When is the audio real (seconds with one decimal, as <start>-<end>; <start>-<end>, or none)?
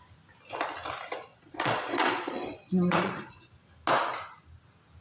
0.0-1.3; 3.5-5.0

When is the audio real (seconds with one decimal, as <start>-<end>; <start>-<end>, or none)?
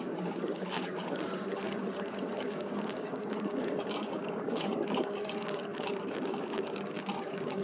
none